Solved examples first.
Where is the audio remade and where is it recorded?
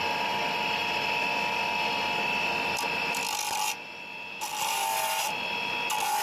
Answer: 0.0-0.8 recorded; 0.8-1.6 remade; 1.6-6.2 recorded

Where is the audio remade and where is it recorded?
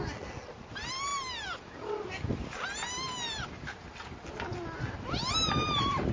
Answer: 0.0-6.1 recorded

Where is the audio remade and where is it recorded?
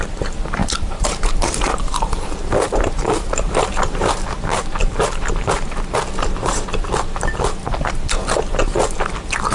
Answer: 0.0-0.6 recorded; 0.6-4.3 remade; 4.3-4.8 recorded; 4.8-5.3 remade; 5.3-9.5 recorded